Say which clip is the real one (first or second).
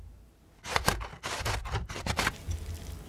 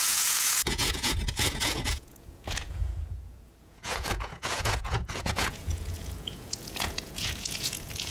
first